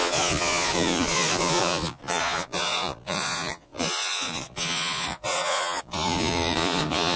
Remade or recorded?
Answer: remade